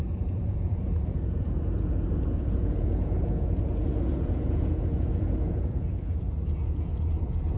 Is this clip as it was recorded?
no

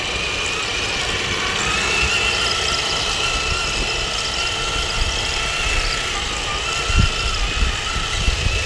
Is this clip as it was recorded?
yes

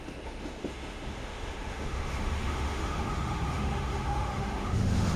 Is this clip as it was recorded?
no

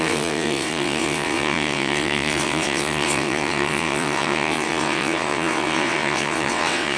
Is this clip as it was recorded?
no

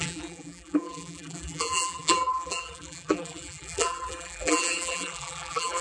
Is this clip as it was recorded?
no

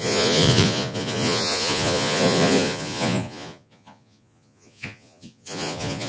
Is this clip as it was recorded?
no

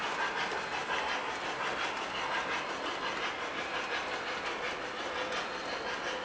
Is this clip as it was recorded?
yes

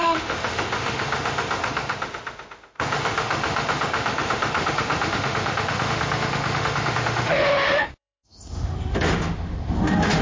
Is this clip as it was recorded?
no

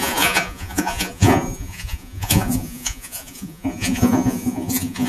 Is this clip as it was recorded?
no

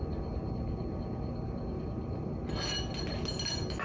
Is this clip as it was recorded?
yes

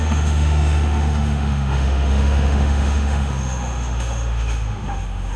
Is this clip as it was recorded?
no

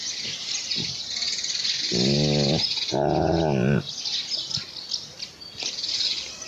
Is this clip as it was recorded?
yes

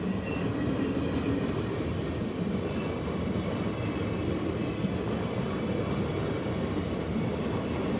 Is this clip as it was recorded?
yes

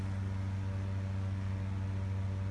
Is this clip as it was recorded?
yes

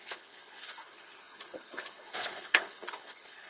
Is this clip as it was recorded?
no